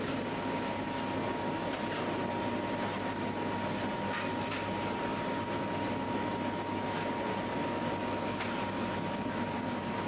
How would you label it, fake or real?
real